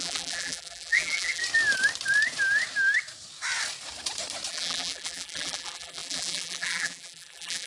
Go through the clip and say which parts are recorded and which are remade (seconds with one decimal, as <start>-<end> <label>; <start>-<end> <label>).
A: 0.0-1.4 remade; 1.4-4.5 recorded; 4.5-7.7 remade